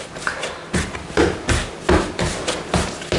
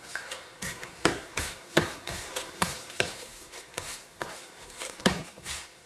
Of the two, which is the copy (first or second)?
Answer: second